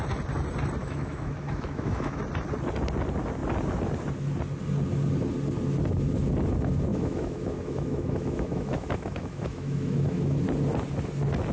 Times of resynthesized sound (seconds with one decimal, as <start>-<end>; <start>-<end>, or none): 0.8-2.2; 6.9-10.4